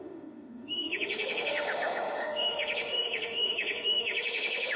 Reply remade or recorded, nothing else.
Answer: remade